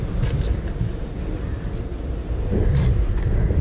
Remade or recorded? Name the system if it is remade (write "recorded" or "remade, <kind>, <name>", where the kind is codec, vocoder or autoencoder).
recorded